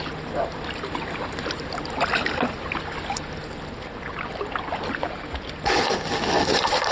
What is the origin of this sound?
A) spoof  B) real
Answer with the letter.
B